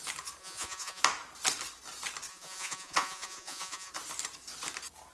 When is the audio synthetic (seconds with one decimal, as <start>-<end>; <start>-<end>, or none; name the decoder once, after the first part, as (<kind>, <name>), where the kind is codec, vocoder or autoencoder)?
0.4-1.0 (vocoder, Vocos); 2.3-3.9